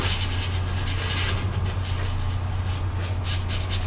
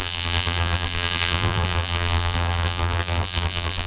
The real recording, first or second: first